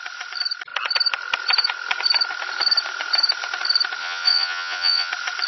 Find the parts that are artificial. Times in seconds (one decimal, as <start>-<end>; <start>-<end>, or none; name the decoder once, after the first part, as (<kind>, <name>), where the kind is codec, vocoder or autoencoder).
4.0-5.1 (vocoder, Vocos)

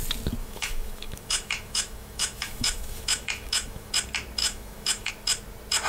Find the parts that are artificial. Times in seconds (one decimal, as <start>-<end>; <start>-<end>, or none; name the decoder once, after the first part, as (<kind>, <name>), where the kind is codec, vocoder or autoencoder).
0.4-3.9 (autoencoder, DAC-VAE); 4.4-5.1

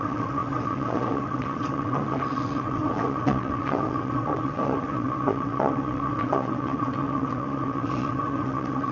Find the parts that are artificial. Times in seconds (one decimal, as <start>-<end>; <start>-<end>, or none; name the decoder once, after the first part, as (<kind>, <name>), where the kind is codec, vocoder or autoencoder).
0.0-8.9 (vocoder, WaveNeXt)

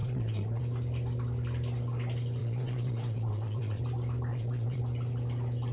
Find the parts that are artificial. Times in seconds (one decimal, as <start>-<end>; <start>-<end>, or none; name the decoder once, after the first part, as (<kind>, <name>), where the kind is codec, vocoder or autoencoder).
0.0-0.6 (vocoder, Vocos); 2.4-3.8; 4.3-4.8

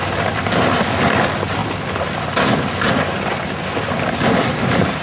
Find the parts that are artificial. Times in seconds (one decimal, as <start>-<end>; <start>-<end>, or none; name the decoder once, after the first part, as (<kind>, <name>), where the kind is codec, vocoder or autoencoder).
none

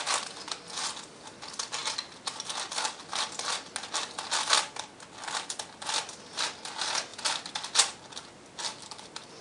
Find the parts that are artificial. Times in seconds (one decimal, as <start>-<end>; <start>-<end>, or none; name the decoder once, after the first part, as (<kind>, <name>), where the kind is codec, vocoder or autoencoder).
none